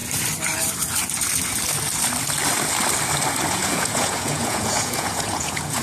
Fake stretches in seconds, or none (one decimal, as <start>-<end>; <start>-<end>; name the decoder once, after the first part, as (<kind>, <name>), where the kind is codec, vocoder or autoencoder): 3.5-5.8 (vocoder, Vocos)